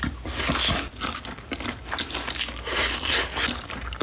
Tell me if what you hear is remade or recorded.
recorded